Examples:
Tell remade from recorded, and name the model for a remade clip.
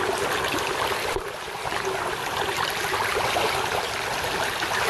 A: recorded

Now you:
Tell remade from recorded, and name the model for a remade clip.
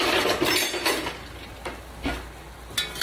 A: recorded